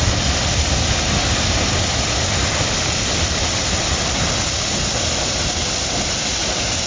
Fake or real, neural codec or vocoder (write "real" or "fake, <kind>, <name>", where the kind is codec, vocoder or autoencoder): real